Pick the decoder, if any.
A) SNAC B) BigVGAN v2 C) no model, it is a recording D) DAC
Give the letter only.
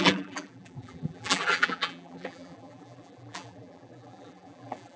B